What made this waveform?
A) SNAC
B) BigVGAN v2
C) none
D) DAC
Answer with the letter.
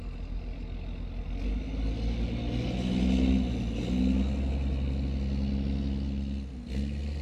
C